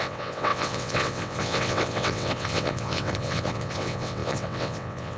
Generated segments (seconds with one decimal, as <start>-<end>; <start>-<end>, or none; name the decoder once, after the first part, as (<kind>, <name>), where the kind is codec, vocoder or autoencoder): 0.0-5.2 (vocoder, WaveNeXt)